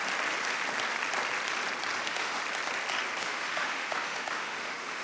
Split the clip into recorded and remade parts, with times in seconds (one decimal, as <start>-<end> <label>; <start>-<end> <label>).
0.0-2.0 recorded; 2.0-2.4 remade; 2.4-3.2 recorded; 3.2-5.0 remade